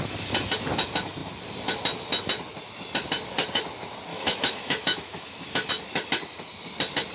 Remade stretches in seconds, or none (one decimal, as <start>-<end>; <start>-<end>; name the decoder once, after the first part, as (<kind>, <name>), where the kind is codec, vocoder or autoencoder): 4.1-5.7 (autoencoder, DAC-VAE)